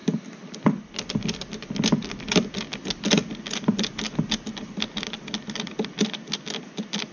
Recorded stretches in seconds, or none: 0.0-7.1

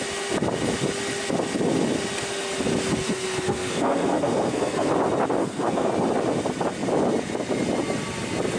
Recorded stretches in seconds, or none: 0.0-3.0; 4.9-5.4; 5.9-8.6

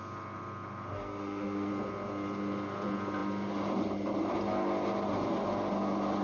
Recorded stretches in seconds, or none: 0.0-0.9; 1.7-6.2

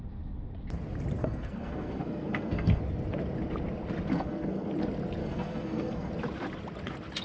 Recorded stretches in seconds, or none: 0.0-1.2; 2.8-4.1; 4.7-5.2; 6.1-7.2

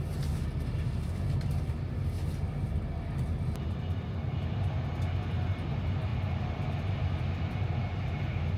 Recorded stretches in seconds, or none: 0.0-8.6

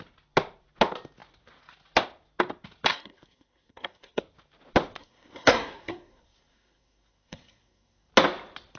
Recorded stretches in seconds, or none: 0.0-2.9; 4.2-5.0; 8.1-8.8

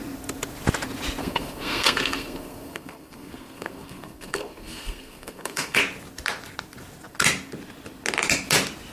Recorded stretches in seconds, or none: 0.0-1.2; 5.8-8.9

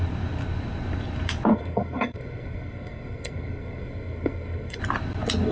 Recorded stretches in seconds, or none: 0.0-1.5; 4.8-5.5